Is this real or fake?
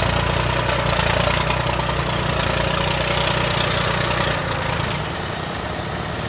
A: real